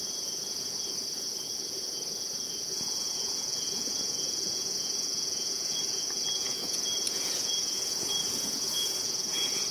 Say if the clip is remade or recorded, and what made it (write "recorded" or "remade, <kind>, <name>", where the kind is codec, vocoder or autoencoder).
remade, vocoder, Vocos